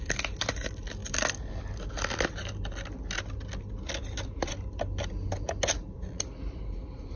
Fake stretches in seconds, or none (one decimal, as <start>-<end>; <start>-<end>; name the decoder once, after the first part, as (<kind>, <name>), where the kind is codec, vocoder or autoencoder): none